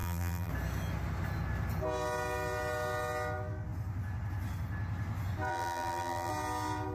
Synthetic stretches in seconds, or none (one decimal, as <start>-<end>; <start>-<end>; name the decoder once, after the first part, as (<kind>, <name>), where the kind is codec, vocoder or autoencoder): 0.0-0.5 (vocoder, BigVGAN v2); 5.5-6.3